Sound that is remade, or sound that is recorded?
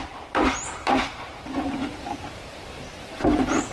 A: remade